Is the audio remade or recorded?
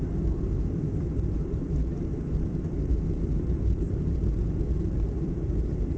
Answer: remade